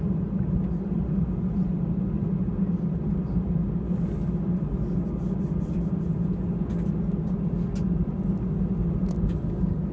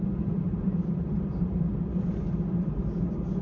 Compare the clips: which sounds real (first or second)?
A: first